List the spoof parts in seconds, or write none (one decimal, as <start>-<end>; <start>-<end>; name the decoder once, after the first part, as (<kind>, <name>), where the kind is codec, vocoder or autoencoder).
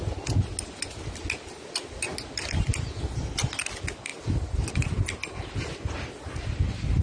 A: none